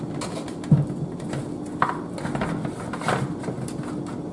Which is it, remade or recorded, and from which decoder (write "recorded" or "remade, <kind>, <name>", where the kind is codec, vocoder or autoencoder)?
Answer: recorded